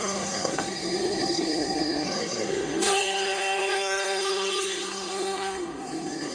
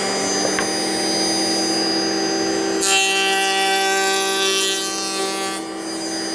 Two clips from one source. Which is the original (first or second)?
second